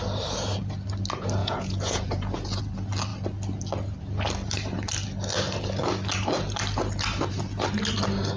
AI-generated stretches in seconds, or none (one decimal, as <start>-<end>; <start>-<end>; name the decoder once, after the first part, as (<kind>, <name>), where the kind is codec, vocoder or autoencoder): 1.4-2.6 (vocoder, Vocos)